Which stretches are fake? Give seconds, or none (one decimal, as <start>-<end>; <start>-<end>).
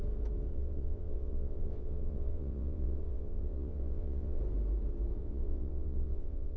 0.5-4.4; 5.2-6.6